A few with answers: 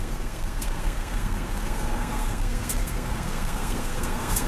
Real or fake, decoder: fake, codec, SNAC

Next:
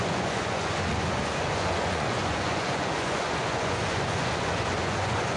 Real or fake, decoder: fake, vocoder, Vocos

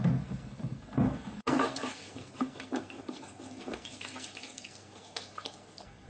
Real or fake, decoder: fake, codec, SNAC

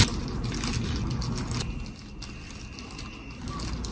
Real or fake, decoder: real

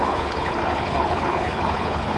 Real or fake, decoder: fake, codec, HILCodec